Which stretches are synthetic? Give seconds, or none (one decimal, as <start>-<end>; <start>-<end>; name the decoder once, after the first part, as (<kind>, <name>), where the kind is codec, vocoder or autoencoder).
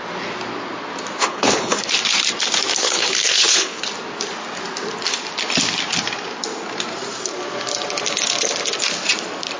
1.2-1.9 (codec, HILCodec); 2.8-3.8